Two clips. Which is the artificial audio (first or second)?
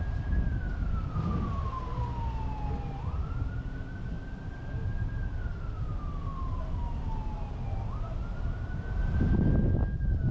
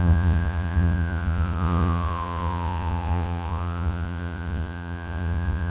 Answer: second